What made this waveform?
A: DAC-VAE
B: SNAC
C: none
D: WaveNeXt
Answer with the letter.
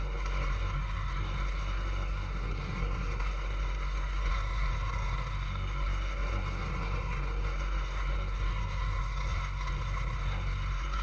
B